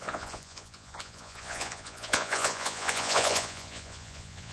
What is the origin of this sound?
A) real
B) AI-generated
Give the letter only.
B